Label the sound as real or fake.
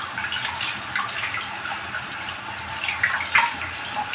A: real